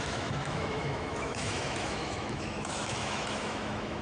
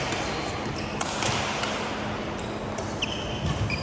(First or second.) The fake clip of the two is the first